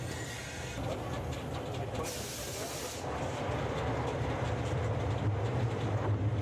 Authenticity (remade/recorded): recorded